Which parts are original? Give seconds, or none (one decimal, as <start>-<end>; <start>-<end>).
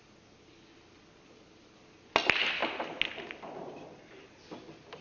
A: 0.0-5.0